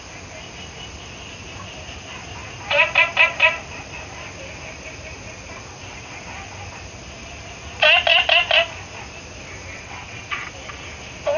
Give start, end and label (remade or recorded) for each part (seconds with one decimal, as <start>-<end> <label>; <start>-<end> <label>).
0.0-9.7 recorded; 9.7-10.5 remade; 10.5-11.4 recorded